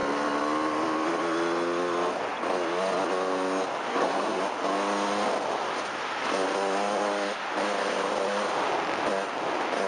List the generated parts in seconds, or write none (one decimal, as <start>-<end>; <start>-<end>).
3.9-4.4